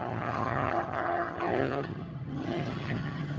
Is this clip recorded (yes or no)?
no